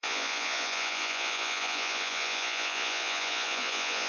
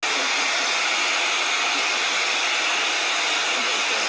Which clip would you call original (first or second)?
second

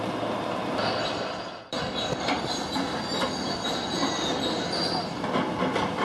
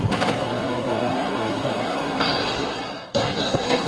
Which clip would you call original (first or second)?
first